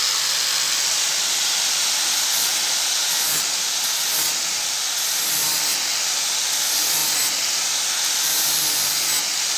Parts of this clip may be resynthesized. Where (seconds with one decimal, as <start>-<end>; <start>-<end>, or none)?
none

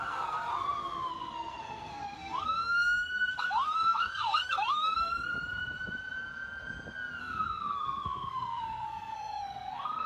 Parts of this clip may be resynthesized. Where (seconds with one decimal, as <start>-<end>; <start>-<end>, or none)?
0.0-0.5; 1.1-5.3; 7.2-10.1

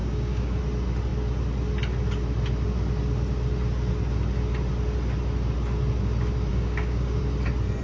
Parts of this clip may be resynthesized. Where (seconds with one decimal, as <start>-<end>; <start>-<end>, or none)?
0.0-0.6; 6.5-7.2

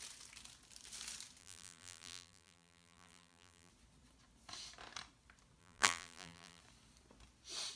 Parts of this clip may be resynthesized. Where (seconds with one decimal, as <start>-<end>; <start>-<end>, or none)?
1.4-3.7; 5.6-6.6

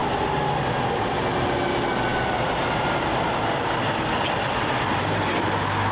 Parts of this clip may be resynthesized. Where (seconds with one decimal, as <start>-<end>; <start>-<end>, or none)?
none

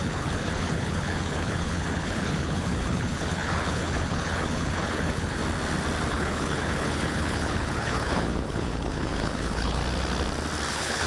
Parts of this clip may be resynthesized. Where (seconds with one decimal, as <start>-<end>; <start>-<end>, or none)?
0.0-5.4; 6.1-9.8; 10.7-11.1

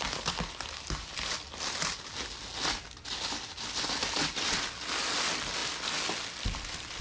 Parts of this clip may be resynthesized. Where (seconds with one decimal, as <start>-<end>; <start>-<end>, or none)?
none

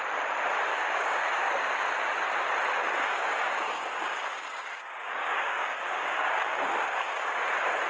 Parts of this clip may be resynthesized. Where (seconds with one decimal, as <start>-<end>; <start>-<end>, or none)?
0.7-1.5; 2.8-7.5